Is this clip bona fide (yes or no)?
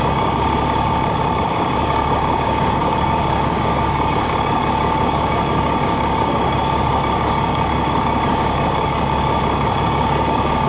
no